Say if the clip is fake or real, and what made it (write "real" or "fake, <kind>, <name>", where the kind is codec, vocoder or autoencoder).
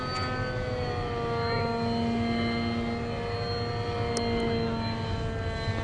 real